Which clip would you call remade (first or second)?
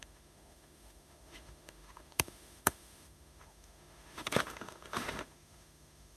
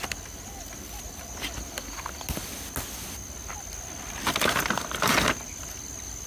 first